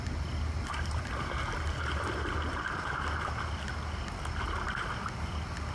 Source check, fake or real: real